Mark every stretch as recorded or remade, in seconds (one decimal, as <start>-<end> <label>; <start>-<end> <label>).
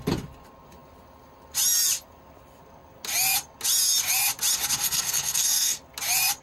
0.0-4.8 recorded; 4.8-5.8 remade; 5.8-6.4 recorded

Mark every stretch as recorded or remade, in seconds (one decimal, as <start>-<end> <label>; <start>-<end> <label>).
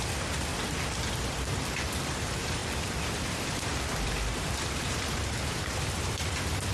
0.0-0.5 remade; 0.5-1.1 recorded; 1.1-6.7 remade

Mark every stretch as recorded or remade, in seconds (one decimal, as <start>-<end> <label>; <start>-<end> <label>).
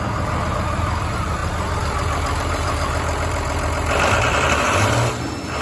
0.0-1.4 recorded; 1.4-4.8 remade; 4.8-5.6 recorded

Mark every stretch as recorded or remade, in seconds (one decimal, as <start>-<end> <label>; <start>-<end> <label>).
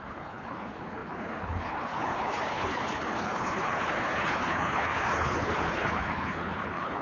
0.0-7.0 remade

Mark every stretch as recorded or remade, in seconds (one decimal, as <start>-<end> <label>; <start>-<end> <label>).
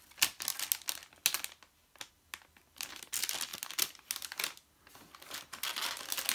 0.0-6.3 recorded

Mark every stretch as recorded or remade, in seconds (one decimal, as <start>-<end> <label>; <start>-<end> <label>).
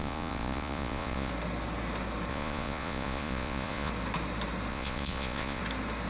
0.0-1.3 remade; 1.3-2.3 recorded; 2.3-3.9 remade; 3.9-4.7 recorded; 4.7-5.6 remade; 5.6-6.1 recorded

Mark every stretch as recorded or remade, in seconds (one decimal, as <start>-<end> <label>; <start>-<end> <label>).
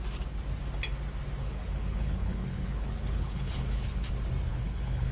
0.0-1.4 recorded; 1.4-4.1 remade; 4.1-4.5 recorded; 4.5-5.1 remade